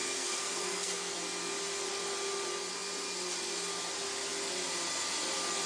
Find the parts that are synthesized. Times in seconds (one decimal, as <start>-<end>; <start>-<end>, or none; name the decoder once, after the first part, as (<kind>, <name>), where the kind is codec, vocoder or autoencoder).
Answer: 0.0-1.1 (codec, SNAC)